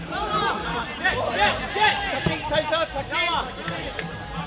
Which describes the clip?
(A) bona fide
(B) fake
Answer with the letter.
A